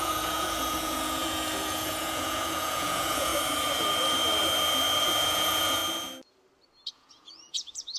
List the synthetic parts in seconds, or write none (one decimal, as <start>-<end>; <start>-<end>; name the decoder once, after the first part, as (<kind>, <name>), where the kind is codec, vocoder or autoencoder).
0.0-3.3 (vocoder, Vocos); 5.2-5.8; 6.9-8.0

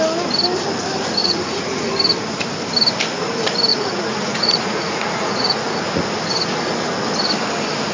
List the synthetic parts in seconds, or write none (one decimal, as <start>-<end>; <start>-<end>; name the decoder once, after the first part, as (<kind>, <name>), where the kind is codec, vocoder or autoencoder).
1.2-1.9 (vocoder, Vocos); 3.7-6.0